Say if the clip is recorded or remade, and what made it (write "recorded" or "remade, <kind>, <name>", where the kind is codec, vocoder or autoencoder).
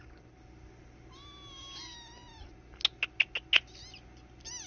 recorded